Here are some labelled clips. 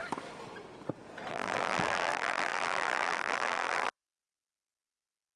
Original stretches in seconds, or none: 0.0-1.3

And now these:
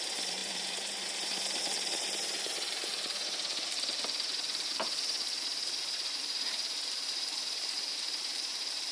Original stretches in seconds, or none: none

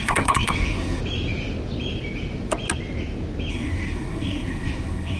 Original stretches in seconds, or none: 1.0-3.5

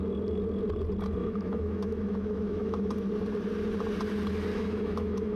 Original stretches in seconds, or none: 0.0-1.2; 2.9-4.5

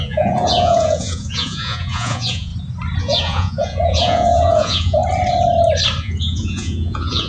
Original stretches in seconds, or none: 2.5-3.0; 5.0-6.0

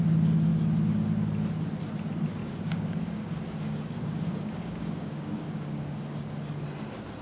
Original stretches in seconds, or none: 0.0-2.4; 6.2-7.2